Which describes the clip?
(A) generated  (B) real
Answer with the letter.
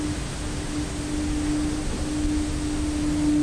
B